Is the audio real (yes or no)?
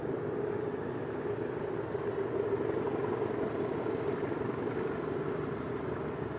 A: yes